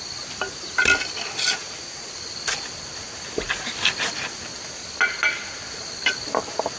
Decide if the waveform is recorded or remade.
recorded